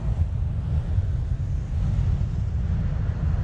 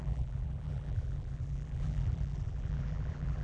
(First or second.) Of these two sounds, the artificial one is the second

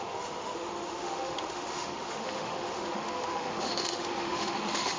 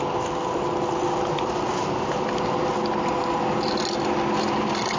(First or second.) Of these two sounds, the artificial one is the first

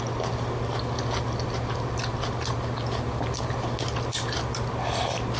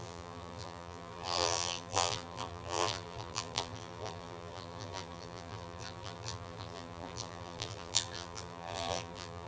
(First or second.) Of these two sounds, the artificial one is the second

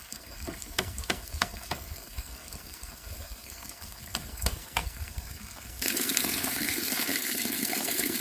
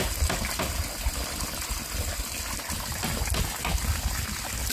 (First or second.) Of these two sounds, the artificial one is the first